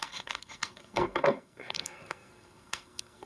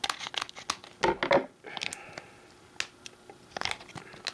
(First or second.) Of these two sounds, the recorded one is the second